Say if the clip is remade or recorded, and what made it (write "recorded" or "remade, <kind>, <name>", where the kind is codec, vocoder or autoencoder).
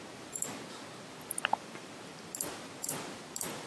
remade, vocoder, BigVGAN v2